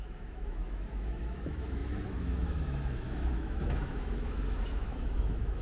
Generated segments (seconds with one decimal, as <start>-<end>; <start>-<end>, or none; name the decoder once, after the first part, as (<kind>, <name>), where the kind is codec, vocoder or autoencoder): 0.0-5.6 (autoencoder, DAC-VAE)